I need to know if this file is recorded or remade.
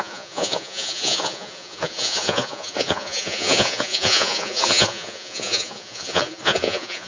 remade